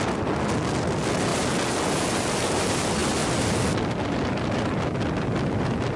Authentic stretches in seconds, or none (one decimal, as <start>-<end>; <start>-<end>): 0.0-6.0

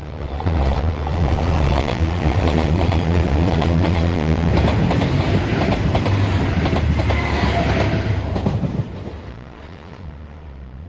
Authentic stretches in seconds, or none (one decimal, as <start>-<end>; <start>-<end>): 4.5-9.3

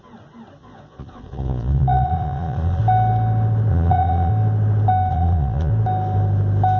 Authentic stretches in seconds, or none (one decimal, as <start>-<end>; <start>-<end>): 0.0-0.6; 2.8-3.7; 4.3-5.1; 5.7-6.8